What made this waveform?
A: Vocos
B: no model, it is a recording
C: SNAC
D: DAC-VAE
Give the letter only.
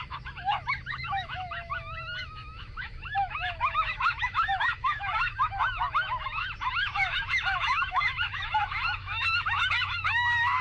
D